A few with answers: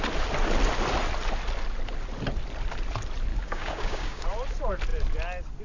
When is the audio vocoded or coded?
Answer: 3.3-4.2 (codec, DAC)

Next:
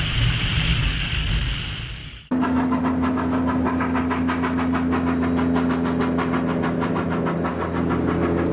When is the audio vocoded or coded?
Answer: 0.7-1.3 (codec, DAC); 2.0-2.8

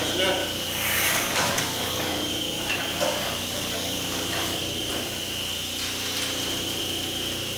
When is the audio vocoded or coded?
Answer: 0.4-4.9 (codec, DAC)